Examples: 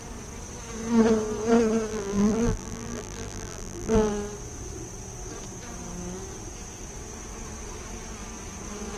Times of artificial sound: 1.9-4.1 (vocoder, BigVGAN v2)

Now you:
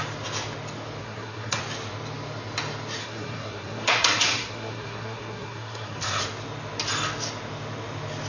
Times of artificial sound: 1.0-1.6 (codec, SNAC); 3.0-6.2

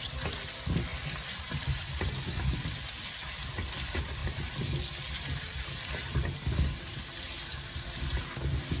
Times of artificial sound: none

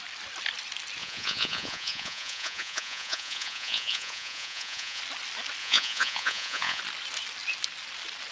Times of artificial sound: 1.0-5.0 (vocoder, Vocos); 5.6-6.8